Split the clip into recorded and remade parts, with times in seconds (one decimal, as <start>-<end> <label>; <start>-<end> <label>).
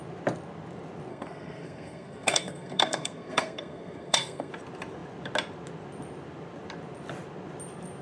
0.0-1.1 recorded; 1.1-4.5 remade; 4.5-8.0 recorded